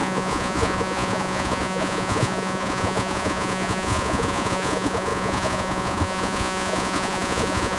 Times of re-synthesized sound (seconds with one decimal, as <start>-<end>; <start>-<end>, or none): 0.0-7.8